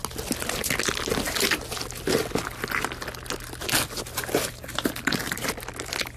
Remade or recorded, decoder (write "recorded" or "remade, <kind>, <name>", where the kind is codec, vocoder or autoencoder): recorded